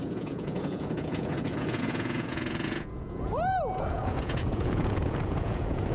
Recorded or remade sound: remade